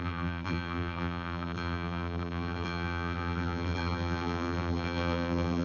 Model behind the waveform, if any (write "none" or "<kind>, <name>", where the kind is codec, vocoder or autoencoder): vocoder, BigVGAN v2